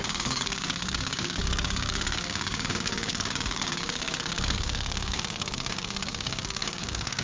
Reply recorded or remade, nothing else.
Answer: remade